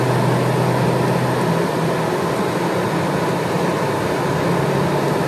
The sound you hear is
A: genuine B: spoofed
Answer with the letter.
A